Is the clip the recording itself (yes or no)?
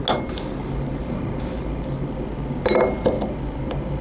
yes